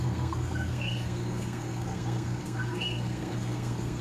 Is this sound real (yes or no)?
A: no